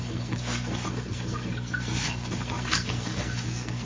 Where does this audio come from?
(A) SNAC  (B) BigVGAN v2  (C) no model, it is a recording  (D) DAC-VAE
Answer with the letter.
A